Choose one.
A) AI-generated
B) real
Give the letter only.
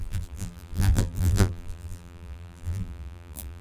A